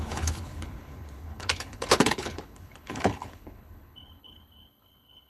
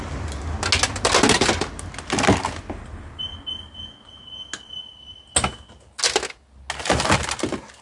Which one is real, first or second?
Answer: second